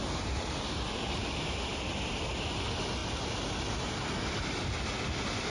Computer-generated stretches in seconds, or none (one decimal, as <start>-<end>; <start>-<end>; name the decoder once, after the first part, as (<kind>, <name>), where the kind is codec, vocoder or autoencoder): 1.7-2.3 (vocoder, BigVGAN v2)